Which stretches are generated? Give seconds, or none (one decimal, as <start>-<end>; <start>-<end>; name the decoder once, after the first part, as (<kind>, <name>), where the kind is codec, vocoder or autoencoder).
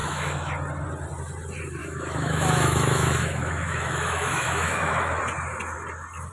0.0-0.5 (autoencoder, DAC-VAE); 1.8-5.2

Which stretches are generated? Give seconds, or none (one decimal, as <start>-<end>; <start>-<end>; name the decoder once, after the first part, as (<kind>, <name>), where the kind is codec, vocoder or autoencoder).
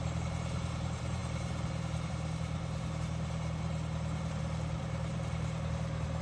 0.0-6.2 (vocoder, BigVGAN v2)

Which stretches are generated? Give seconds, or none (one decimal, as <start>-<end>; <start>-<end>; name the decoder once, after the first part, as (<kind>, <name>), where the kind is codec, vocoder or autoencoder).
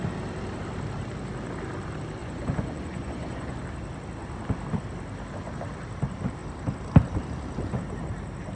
2.2-3.6 (vocoder, Vocos)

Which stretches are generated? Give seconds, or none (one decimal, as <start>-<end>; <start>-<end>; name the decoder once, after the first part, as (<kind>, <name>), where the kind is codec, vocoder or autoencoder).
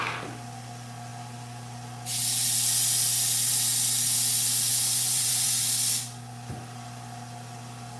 4.7-5.6 (vocoder, Vocos)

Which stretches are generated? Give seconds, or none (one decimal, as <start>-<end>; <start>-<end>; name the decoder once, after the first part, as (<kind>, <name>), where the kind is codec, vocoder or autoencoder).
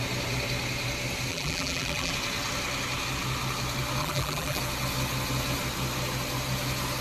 1.3-2.1 (vocoder, BigVGAN v2); 4.0-4.6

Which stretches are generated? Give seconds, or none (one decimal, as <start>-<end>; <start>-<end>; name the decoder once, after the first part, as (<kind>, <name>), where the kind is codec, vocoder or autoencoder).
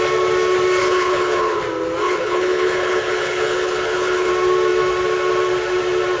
0.8-1.6 (codec, HILCodec); 2.0-4.3